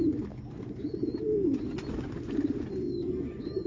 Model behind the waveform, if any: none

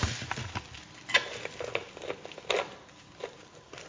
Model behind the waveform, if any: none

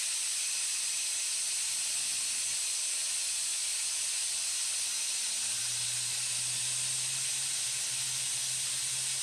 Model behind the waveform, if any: none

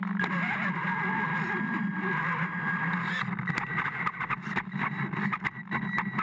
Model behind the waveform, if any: none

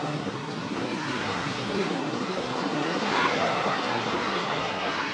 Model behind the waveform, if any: codec, SNAC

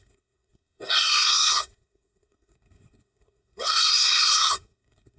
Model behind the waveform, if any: codec, SNAC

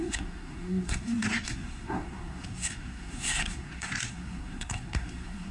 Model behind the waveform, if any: codec, SNAC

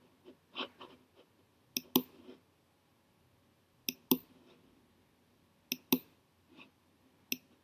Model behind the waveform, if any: none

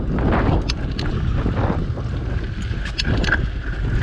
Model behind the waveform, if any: none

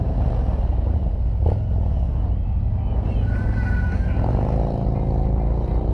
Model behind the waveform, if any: none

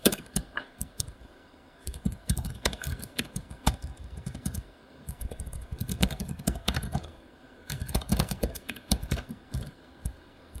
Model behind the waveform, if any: codec, SNAC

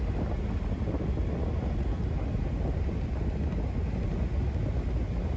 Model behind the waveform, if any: none